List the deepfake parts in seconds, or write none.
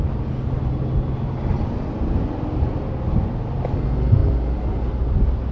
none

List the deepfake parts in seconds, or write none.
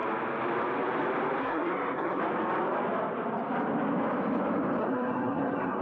1.4-2.2 (codec, SNAC); 4.8-5.8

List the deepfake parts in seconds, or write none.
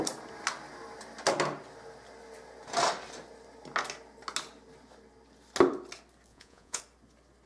6.3-6.8 (vocoder, Vocos)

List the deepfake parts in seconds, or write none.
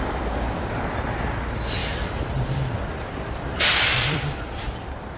0.0-5.2 (vocoder, BigVGAN v2)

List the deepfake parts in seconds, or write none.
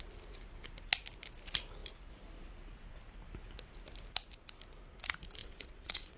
5.4-6.2 (vocoder, WaveNeXt)